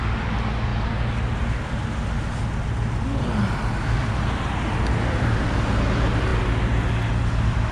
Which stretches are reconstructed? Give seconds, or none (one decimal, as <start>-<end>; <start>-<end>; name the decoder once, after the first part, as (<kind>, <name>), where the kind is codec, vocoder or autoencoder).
none